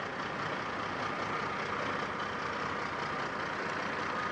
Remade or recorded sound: recorded